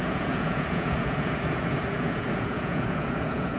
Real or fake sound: fake